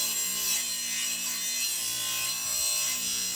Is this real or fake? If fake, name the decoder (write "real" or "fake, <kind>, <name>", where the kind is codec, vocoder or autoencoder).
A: real